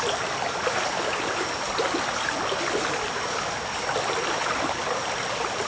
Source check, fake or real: real